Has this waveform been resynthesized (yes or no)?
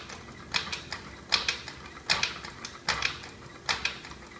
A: no